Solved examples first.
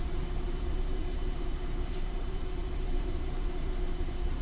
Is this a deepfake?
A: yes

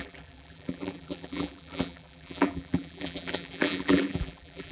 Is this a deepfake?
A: yes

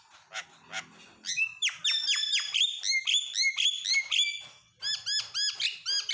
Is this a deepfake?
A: no